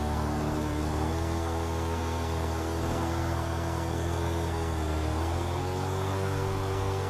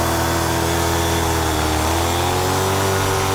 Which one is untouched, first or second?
second